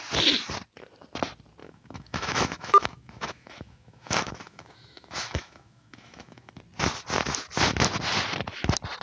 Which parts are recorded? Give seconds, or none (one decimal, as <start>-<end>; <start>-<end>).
0.0-1.6; 6.5-9.0